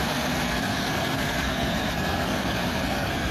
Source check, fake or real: fake